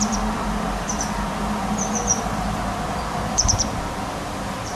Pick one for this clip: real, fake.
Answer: fake